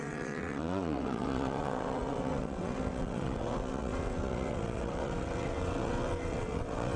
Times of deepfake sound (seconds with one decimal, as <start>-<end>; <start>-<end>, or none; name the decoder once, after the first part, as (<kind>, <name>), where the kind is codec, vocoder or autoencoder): 0.0-7.0 (vocoder, WaveNeXt)